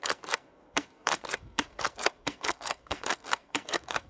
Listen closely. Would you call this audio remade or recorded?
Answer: remade